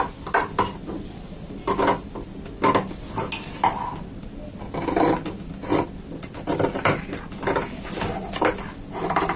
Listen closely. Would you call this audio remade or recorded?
recorded